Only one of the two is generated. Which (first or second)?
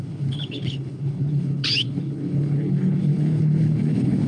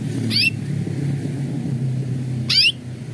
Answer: first